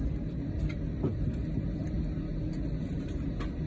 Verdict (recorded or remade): recorded